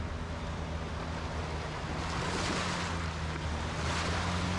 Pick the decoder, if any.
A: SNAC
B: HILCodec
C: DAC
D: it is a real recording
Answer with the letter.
D